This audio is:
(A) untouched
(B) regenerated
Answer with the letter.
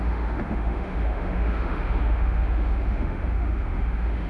B